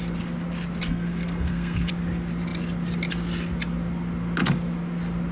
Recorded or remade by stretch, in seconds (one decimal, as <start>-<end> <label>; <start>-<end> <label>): 0.0-0.9 recorded; 0.9-1.9 remade; 1.9-5.3 recorded